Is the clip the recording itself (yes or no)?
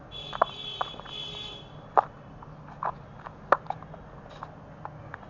yes